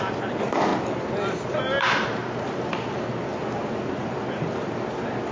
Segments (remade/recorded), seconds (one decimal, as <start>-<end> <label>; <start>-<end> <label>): 0.0-5.3 recorded